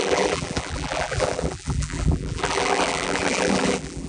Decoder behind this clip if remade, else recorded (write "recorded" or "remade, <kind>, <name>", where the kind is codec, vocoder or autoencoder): remade, vocoder, BigVGAN v2